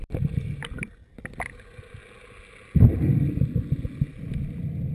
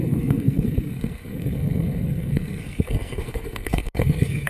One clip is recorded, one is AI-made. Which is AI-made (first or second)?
second